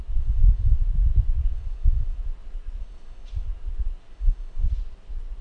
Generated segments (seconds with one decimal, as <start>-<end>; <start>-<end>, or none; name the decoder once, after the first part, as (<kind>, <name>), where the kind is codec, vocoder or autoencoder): 0.4-2.2 (vocoder, Vocos)